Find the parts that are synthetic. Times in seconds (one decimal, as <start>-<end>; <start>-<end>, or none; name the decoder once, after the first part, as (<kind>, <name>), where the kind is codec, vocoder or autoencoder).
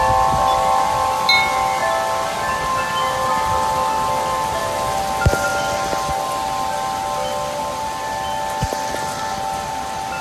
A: none